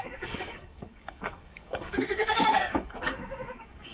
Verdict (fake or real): fake